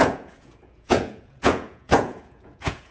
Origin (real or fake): fake